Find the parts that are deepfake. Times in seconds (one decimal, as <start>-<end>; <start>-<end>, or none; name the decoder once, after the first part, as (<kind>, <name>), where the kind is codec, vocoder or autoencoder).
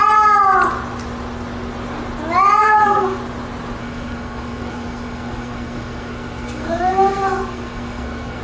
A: 2.6-3.2 (codec, SNAC); 3.8-8.4